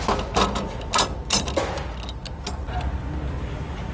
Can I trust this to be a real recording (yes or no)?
yes